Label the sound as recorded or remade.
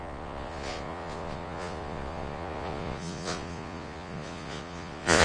remade